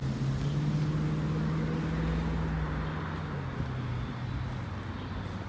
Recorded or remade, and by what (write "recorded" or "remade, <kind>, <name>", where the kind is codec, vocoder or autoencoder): recorded